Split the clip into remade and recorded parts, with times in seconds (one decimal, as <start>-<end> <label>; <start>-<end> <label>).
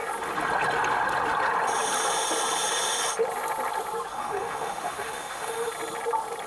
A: 0.0-4.1 recorded; 4.1-5.7 remade; 5.7-6.5 recorded